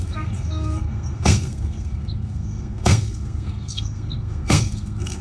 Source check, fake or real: fake